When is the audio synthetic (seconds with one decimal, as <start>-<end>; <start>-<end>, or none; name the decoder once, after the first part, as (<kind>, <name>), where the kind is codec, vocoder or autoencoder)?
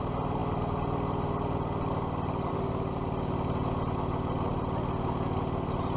none